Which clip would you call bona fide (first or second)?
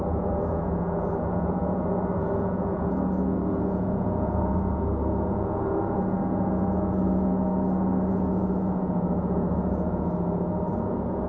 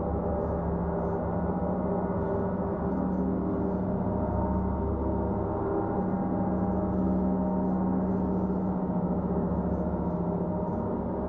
second